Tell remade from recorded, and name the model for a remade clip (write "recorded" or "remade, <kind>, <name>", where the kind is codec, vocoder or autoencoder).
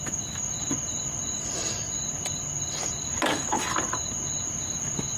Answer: recorded